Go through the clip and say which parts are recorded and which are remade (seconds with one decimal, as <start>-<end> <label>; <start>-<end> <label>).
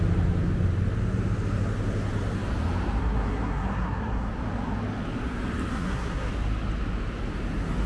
0.0-3.0 recorded; 3.0-4.3 remade; 4.3-5.7 recorded; 5.7-6.3 remade; 6.3-7.9 recorded